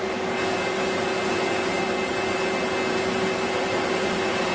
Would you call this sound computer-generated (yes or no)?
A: no